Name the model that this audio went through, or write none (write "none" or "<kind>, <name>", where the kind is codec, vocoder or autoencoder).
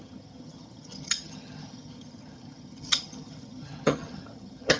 vocoder, HiFi-GAN